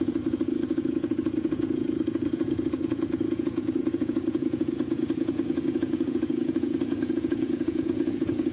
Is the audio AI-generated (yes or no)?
yes